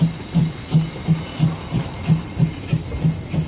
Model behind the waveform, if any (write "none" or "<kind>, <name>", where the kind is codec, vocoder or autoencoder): none